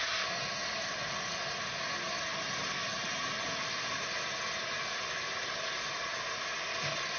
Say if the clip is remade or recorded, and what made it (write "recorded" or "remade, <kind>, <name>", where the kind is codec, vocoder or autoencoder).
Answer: recorded